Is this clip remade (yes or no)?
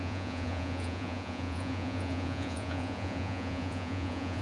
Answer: yes